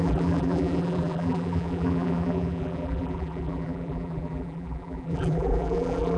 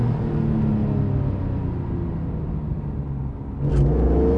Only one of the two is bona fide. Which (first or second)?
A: second